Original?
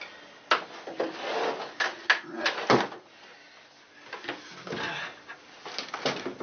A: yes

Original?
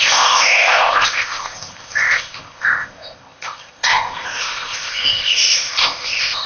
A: no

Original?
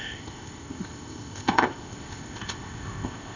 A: no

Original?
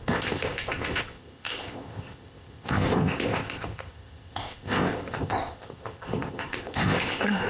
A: no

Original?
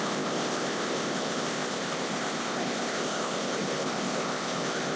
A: no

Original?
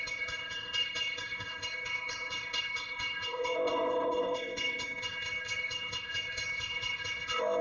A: no